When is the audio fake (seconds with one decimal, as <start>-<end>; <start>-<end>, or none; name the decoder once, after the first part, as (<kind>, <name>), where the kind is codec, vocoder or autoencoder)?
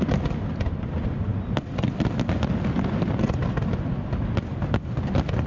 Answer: none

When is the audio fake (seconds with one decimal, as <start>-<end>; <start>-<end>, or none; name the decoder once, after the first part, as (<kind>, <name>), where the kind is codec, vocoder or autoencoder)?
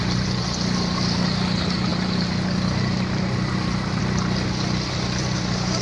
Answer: none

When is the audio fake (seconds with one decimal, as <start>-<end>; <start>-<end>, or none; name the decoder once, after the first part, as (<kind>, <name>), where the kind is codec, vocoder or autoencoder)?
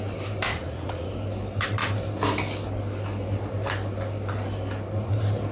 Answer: 0.5-1.1 (vocoder, Vocos)